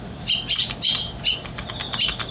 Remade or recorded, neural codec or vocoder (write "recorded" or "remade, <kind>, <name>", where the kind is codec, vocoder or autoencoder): recorded